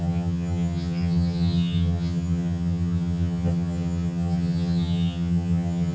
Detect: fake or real fake